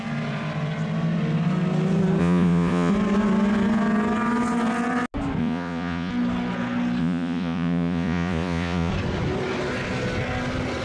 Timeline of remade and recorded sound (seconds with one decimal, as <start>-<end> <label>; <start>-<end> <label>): 0.0-2.2 recorded; 2.2-2.9 remade; 2.9-5.4 recorded; 5.4-6.1 remade; 6.1-7.0 recorded; 7.0-8.9 remade; 8.9-10.8 recorded